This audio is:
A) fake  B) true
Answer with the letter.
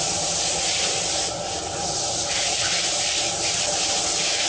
B